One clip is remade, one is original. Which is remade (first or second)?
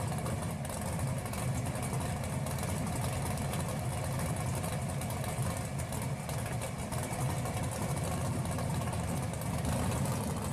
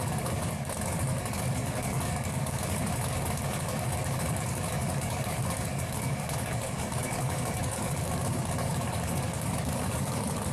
second